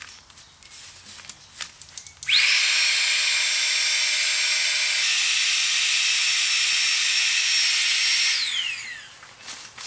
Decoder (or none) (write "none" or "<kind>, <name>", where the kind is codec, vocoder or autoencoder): none